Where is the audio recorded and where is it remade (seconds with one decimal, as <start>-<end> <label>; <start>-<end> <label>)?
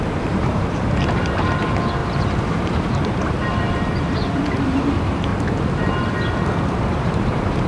0.0-5.3 remade; 5.3-6.9 recorded; 6.9-7.7 remade